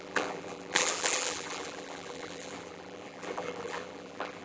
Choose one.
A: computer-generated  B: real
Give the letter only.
A